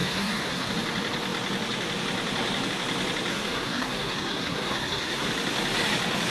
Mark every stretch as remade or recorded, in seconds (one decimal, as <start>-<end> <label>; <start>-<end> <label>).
0.0-0.7 remade; 0.7-3.3 recorded; 3.3-5.3 remade; 5.3-6.3 recorded